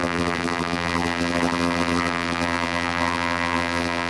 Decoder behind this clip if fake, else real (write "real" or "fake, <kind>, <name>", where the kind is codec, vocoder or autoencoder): fake, vocoder, BigVGAN v2